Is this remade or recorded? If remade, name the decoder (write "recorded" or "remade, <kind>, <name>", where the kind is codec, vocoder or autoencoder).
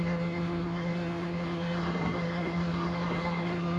remade, codec, SNAC